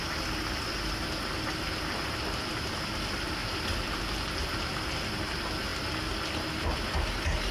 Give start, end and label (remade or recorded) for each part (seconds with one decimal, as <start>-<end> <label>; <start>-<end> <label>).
0.0-3.4 recorded; 3.4-4.0 remade; 4.0-7.5 recorded